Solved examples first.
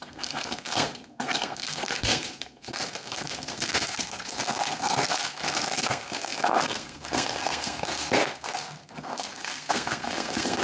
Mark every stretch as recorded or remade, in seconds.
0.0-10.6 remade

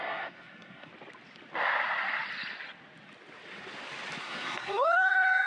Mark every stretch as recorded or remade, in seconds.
0.0-0.9 remade; 0.9-4.2 recorded; 4.2-5.5 remade

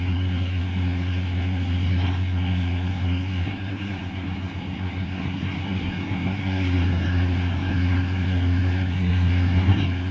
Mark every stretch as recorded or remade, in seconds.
0.0-10.1 remade

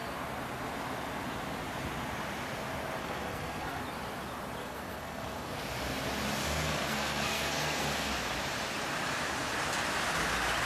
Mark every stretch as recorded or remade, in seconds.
0.0-3.0 recorded; 3.0-3.8 remade; 3.8-4.6 recorded; 4.6-5.5 remade; 5.5-6.4 recorded; 6.4-8.1 remade; 8.1-10.7 recorded

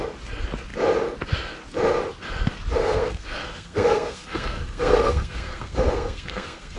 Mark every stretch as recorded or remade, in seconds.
0.0-2.8 recorded; 2.8-6.8 remade

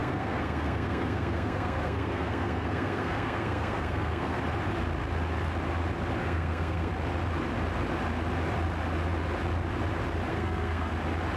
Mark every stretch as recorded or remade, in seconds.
0.0-4.4 remade; 4.4-6.2 recorded; 6.2-6.9 remade; 6.9-10.3 recorded; 10.3-10.9 remade; 10.9-11.4 recorded

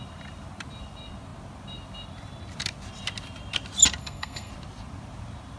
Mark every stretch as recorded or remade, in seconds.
0.0-4.0 recorded; 4.0-4.5 remade; 4.5-5.6 recorded